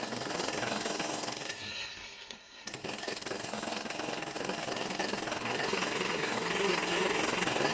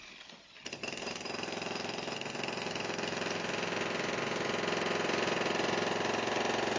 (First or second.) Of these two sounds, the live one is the second